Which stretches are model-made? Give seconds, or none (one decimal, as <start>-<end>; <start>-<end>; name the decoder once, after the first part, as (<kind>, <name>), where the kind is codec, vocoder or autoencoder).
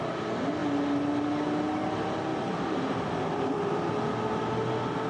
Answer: 2.3-3.9 (vocoder, BigVGAN v2)